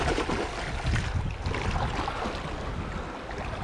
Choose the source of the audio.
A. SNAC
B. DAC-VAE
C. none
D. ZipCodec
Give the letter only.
C